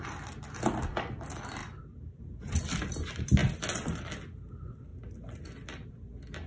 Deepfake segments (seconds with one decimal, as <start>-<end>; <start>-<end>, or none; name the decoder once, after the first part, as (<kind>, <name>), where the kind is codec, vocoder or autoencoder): 1.6-2.2 (vocoder, BigVGAN v2)